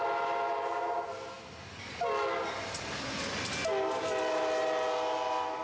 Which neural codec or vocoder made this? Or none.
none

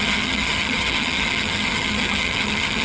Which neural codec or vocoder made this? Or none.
vocoder, HiFi-GAN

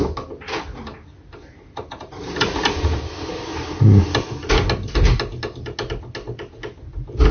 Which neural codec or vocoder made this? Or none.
none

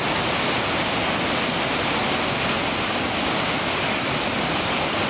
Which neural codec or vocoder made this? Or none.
none